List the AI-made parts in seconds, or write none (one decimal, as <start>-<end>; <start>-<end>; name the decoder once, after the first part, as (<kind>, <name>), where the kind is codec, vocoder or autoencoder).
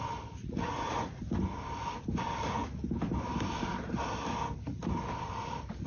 0.4-1.2 (vocoder, Vocos)